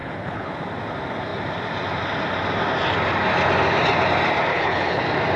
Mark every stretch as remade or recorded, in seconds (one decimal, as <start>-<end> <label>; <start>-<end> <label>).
0.0-0.5 remade; 0.5-4.5 recorded; 4.5-5.0 remade; 5.0-5.4 recorded

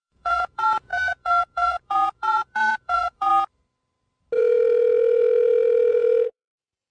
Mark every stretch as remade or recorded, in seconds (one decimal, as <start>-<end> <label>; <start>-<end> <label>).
0.0-3.3 remade; 3.3-4.4 recorded; 4.4-6.9 remade